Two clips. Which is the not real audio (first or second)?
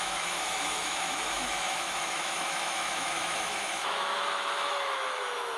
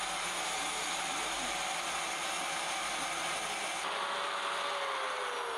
first